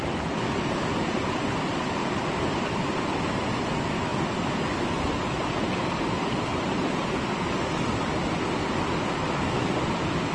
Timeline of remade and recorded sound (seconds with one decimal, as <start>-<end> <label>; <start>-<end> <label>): 0.0-6.5 recorded; 6.5-7.0 remade; 7.0-10.3 recorded